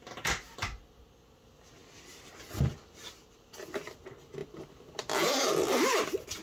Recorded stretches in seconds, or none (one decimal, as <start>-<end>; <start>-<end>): 0.0-6.4

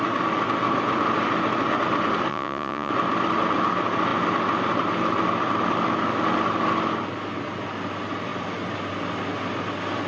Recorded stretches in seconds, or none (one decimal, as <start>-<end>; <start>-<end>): 0.0-2.3; 2.9-10.1

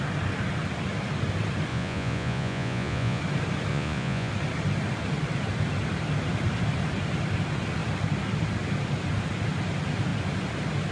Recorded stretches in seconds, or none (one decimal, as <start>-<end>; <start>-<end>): 0.0-1.7; 3.2-3.7; 4.3-10.9